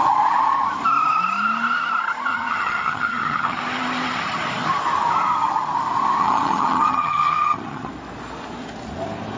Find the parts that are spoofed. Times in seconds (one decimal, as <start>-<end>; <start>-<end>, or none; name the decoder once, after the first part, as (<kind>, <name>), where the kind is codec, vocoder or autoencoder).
2.3-3.6 (vocoder, HiFi-GAN); 6.2-7.9